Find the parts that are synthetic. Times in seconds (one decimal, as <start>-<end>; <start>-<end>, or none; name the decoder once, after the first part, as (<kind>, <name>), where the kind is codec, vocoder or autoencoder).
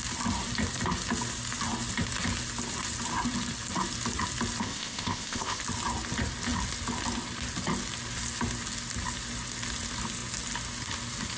4.6-5.6 (codec, ZipCodec)